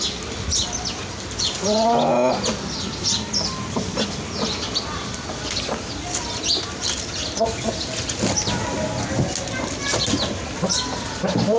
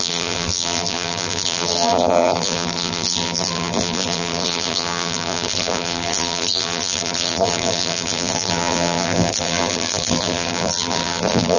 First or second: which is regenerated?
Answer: second